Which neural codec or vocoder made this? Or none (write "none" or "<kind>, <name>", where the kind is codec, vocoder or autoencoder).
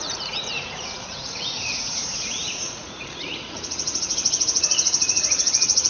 vocoder, Vocos